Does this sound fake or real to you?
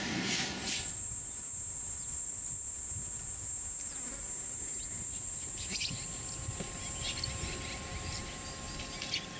real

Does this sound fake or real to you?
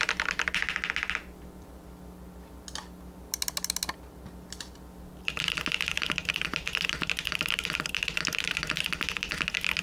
real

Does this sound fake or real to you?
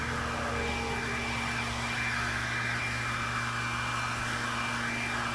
real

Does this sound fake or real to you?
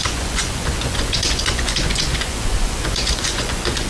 fake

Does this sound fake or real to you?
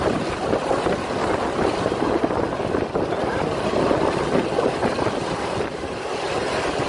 real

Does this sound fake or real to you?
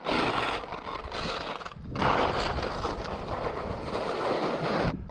real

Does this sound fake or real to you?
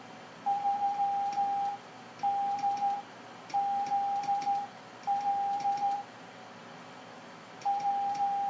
real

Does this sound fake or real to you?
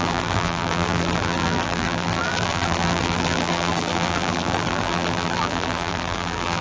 fake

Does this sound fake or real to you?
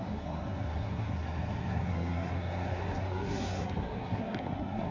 fake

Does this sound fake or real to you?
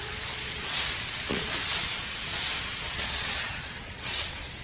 fake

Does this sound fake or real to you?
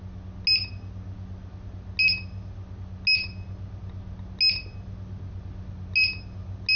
real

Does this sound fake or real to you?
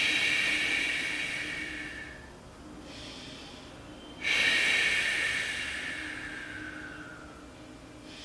real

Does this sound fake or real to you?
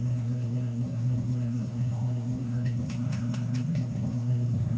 fake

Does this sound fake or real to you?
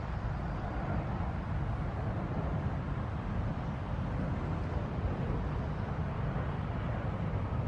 real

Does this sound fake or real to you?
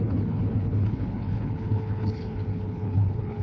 fake